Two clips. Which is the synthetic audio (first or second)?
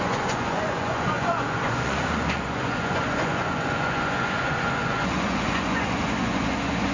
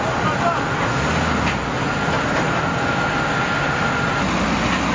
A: first